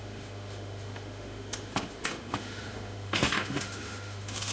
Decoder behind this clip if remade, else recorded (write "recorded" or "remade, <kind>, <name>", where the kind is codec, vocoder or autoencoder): remade, autoencoder, DAC-VAE